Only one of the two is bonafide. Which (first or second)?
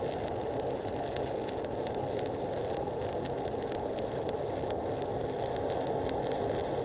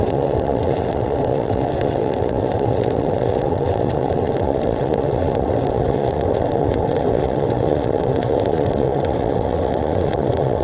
first